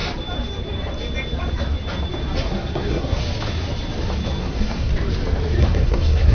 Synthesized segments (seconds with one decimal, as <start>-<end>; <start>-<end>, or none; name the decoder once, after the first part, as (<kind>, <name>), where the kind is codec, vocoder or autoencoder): 2.4-3.2 (codec, SNAC); 4.4-4.9; 5.6-6.3